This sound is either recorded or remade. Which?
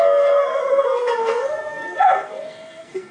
remade